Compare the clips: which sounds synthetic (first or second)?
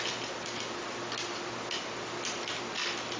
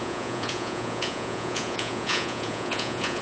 second